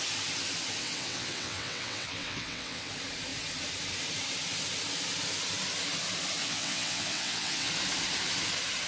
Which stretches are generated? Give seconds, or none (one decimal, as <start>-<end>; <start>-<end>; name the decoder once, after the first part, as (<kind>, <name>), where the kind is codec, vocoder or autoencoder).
0.8-2.9 (vocoder, WaveNeXt); 6.4-7.7